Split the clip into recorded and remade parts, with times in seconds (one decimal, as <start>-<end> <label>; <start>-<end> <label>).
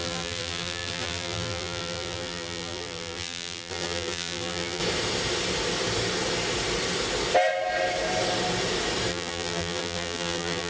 0.0-4.8 remade; 4.8-9.1 recorded; 9.1-10.7 remade